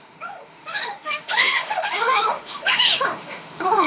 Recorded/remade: remade